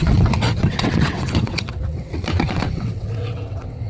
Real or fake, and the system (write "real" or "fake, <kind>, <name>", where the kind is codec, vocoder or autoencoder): fake, vocoder, WaveNeXt